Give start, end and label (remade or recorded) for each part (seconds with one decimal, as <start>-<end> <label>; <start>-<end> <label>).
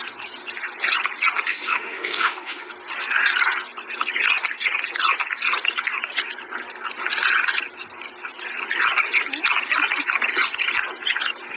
0.0-1.5 recorded; 1.5-2.7 remade; 2.7-11.6 recorded